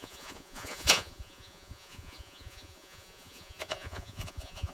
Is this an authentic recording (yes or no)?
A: no